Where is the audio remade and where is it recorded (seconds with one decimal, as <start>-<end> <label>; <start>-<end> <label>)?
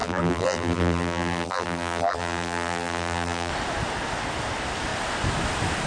0.0-3.5 remade; 3.5-5.9 recorded